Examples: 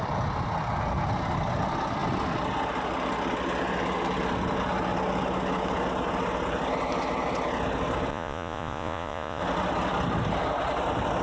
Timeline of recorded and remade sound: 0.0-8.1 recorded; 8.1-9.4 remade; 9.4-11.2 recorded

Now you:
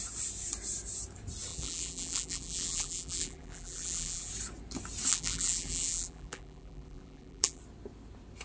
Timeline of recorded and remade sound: 0.0-1.5 recorded; 1.5-4.3 remade; 4.3-5.1 recorded; 5.1-7.6 remade; 7.6-8.4 recorded

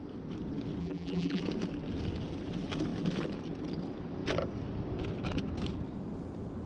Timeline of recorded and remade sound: 0.0-0.8 recorded; 0.8-1.4 remade; 1.4-6.7 recorded

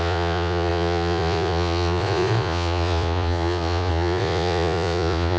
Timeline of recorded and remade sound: 0.0-5.4 remade

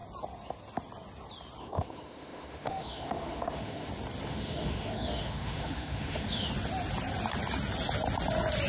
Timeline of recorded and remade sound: 0.0-1.6 recorded; 1.6-3.9 remade; 3.9-4.3 recorded; 4.3-6.5 remade; 6.5-8.7 recorded